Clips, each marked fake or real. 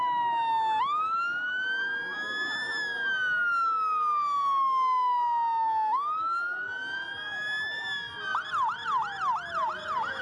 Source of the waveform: real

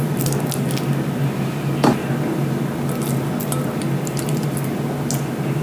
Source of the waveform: real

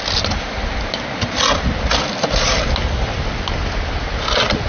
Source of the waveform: real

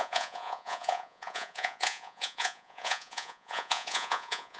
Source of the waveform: fake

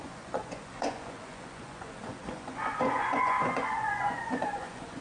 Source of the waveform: fake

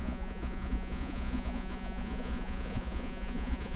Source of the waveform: fake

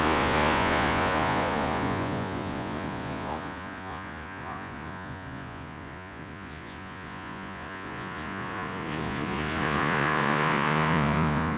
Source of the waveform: fake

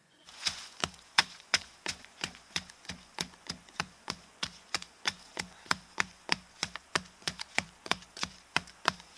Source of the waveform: fake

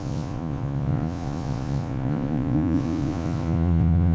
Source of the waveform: fake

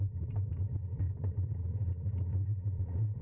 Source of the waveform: fake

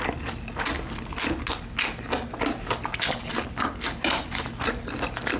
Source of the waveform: real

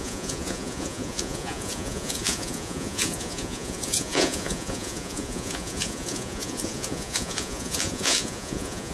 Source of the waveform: fake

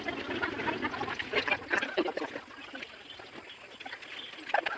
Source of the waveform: real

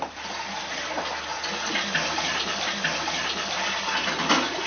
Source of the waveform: real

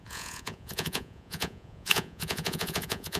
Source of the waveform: fake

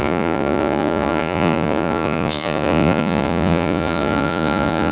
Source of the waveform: fake